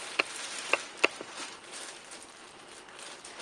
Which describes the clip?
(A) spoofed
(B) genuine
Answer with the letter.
B